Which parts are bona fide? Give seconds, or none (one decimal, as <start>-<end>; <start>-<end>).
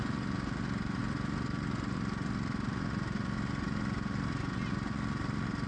0.0-5.7